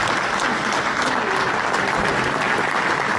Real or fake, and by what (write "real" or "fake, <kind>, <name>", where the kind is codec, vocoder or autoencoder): real